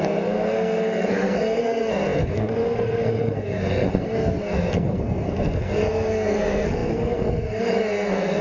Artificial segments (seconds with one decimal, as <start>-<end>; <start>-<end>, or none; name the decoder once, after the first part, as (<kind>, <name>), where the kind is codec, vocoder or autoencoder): 0.0-8.4 (codec, SNAC)

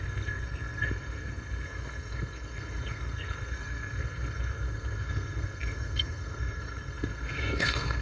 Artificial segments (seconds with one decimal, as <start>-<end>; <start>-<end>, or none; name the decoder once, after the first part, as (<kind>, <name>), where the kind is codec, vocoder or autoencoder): 0.0-8.0 (codec, SNAC)

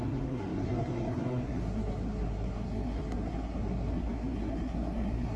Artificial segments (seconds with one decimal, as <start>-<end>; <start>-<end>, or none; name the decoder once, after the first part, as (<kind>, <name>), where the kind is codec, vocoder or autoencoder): 0.0-5.4 (codec, SNAC)

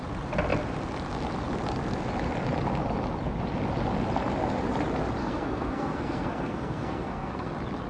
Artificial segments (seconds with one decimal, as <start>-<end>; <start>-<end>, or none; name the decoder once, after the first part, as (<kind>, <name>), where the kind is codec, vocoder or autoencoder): 5.2-7.5 (codec, SNAC)

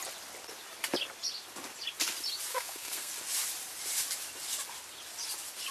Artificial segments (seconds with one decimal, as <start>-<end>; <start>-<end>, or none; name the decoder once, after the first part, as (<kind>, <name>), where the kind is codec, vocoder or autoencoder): 2.5-3.1 (codec, SNAC)

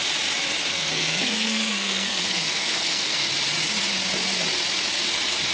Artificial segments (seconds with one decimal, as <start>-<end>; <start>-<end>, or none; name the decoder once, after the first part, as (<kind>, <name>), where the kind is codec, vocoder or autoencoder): 0.7-3.3 (codec, SNAC)

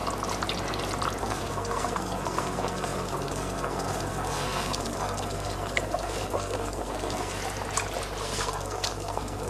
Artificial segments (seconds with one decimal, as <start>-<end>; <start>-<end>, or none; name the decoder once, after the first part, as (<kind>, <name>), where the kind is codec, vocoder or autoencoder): 1.2-7.4 (codec, SNAC); 8.2-9.5

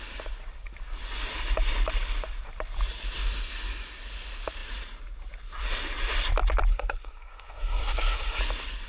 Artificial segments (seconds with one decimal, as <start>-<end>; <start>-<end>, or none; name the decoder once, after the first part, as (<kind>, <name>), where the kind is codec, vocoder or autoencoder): 6.7-8.4 (codec, SNAC)